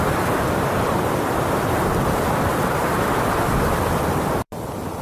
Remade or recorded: remade